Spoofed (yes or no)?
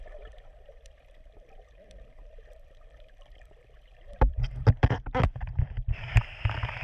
yes